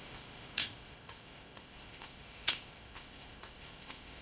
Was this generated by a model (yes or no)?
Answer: yes